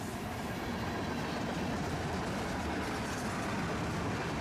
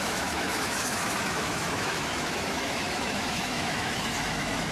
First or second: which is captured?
first